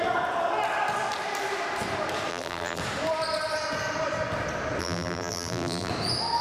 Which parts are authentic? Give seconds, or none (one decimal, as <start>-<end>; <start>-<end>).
0.0-2.3; 2.8-4.8; 5.9-6.4